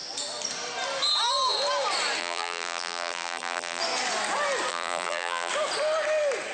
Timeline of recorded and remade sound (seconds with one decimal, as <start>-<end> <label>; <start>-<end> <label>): 0.0-2.2 recorded; 2.2-3.8 remade; 3.8-4.7 recorded; 4.7-5.5 remade; 5.5-6.5 recorded